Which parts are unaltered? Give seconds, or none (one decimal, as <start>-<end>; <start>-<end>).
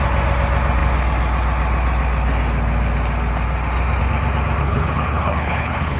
0.0-4.6